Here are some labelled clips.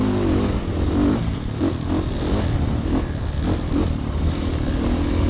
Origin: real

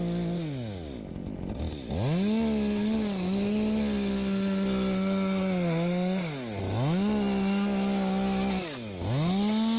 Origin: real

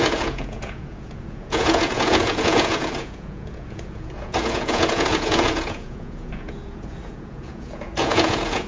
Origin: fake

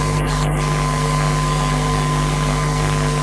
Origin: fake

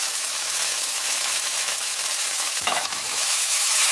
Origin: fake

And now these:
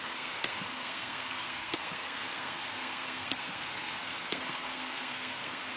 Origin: fake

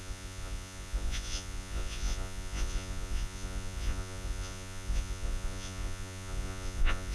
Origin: fake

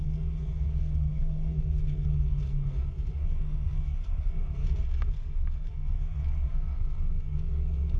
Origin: fake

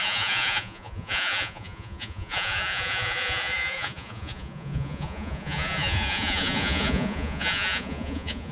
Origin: fake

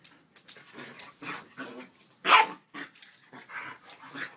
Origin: real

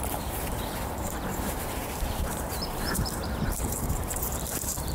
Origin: fake